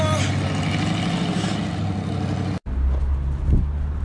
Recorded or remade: recorded